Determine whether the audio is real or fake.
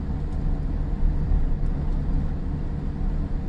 real